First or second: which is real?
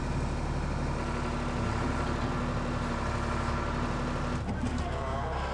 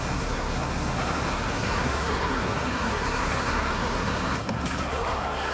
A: first